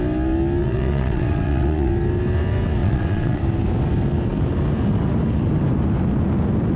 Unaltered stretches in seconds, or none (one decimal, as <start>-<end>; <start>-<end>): 0.0-0.6; 1.9-2.8; 3.4-6.8